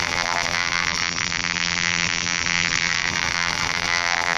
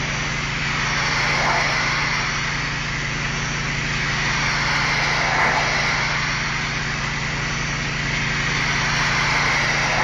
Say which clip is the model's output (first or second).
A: first